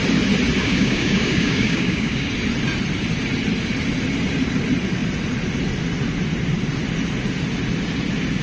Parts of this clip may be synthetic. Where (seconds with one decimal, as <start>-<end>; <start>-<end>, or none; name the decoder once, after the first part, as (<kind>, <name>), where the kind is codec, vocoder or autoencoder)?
0.6-2.3 (codec, DAC)